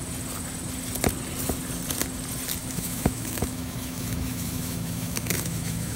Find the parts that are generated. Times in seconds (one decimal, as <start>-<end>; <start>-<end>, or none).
2.6-6.0